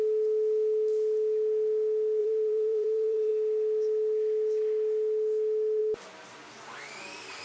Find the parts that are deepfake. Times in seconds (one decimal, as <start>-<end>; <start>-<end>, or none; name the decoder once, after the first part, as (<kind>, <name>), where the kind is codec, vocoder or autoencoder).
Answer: 2.2-3.3 (vocoder, BigVGAN v2)